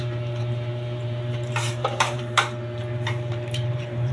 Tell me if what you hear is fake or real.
fake